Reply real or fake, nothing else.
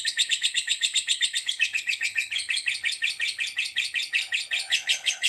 fake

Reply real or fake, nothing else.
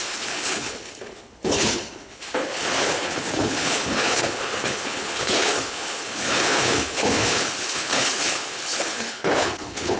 fake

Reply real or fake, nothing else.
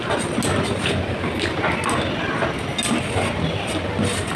real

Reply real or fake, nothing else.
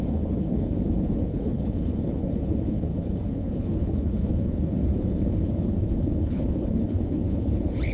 fake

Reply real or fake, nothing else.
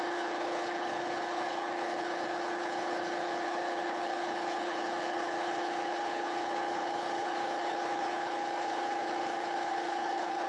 fake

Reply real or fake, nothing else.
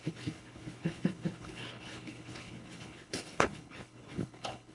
fake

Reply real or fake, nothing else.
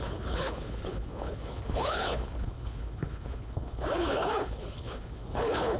fake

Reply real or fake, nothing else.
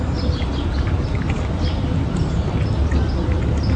real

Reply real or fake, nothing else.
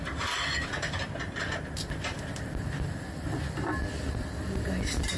real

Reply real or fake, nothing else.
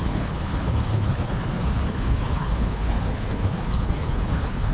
fake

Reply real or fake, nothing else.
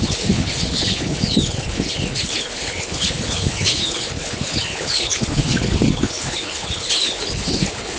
fake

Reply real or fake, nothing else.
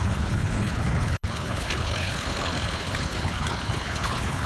fake